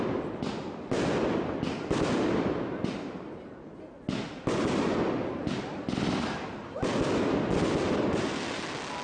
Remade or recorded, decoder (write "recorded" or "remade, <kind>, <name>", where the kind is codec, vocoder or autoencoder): recorded